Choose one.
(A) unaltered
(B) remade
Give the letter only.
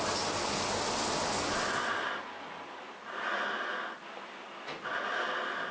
A